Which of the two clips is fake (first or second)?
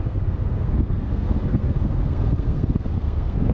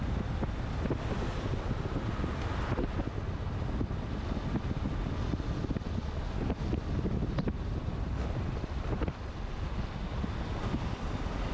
first